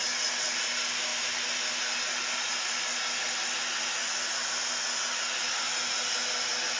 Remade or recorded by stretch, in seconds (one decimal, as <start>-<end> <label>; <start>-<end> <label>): 0.0-6.8 recorded